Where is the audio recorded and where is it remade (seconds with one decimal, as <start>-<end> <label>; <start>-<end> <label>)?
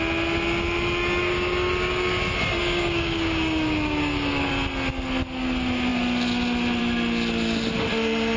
0.0-1.2 recorded; 1.2-2.2 remade; 2.2-2.6 recorded; 2.6-4.5 remade; 4.5-8.4 recorded